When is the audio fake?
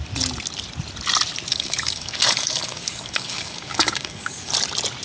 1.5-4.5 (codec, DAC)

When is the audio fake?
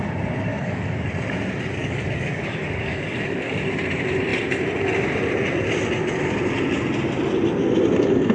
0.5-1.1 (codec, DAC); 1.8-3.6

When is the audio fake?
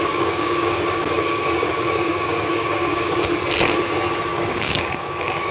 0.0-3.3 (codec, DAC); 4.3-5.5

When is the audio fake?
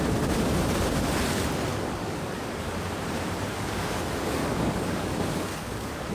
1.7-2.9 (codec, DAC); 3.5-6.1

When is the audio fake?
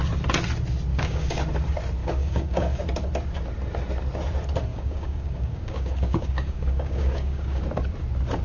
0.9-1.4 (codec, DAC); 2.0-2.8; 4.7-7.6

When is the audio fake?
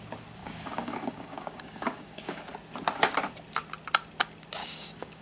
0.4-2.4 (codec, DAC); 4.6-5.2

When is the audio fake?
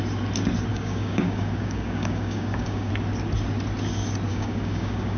0.7-2.9 (codec, DAC); 4.3-5.2